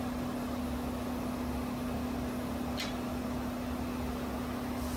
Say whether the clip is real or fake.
real